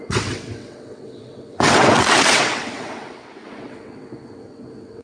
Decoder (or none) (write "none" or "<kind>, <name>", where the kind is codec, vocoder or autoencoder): vocoder, WaveNeXt